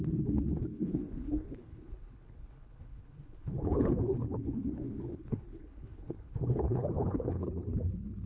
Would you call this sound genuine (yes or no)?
no